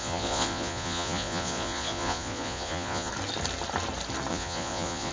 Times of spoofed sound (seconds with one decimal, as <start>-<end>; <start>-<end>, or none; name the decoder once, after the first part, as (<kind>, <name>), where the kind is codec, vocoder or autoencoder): 0.0-3.1 (vocoder, Vocos); 4.3-5.1